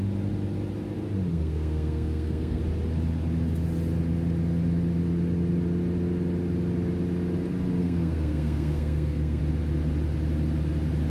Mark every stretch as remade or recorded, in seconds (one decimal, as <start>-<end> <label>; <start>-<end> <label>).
0.0-1.3 recorded; 1.3-2.6 remade; 2.6-7.8 recorded; 7.8-9.4 remade; 9.4-11.1 recorded